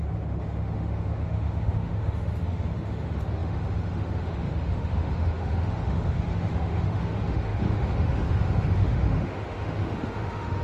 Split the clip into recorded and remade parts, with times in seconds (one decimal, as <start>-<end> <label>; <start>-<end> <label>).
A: 0.0-10.6 remade